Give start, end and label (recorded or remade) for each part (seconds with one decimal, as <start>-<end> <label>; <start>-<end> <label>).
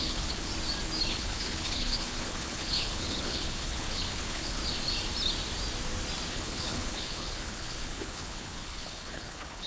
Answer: 0.0-0.5 remade; 0.5-1.1 recorded; 1.1-4.6 remade; 4.6-6.3 recorded; 6.3-9.7 remade